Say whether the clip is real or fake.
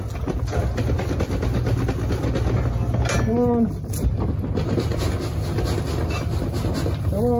real